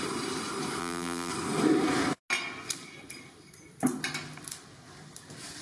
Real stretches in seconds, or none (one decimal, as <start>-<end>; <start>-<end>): 0.0-0.8; 1.3-5.6